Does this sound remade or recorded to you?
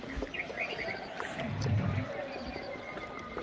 recorded